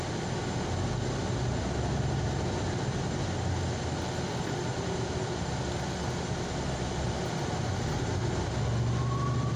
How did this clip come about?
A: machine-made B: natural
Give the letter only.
B